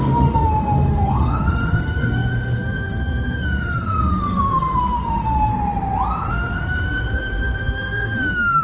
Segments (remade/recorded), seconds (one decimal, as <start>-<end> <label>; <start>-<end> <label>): 0.0-5.5 remade; 5.5-6.3 recorded; 6.3-8.6 remade